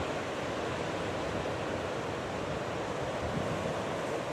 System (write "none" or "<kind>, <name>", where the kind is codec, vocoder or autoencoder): none